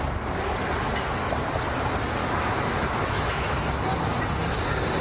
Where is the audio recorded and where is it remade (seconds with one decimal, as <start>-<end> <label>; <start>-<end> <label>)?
0.0-2.2 recorded; 2.2-3.6 remade; 3.6-5.0 recorded